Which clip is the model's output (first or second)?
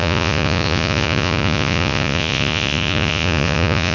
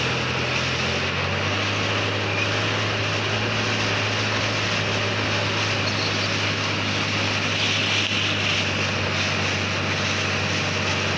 first